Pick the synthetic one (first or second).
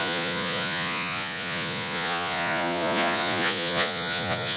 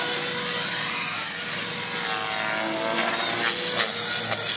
first